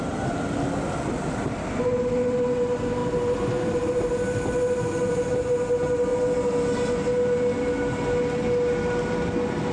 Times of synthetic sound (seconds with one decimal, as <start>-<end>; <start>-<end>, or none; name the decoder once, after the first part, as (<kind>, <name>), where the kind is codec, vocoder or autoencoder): none